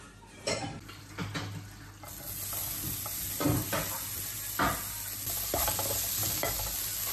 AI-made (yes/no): no